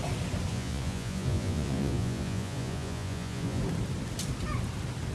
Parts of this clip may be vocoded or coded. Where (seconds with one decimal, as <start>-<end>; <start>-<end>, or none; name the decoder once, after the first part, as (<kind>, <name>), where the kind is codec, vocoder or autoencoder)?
0.5-3.6 (vocoder, Vocos)